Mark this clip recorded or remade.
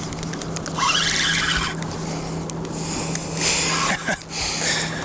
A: recorded